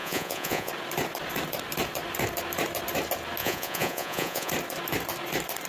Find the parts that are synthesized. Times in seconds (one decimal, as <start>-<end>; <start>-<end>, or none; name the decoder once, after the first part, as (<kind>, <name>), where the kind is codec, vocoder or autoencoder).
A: 0.0-0.7 (vocoder, Vocos); 3.4-4.5